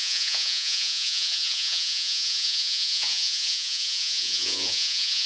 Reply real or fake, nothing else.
fake